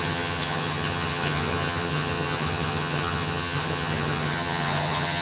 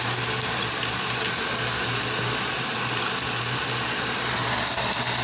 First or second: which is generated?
first